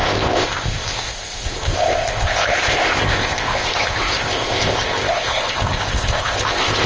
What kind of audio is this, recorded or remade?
remade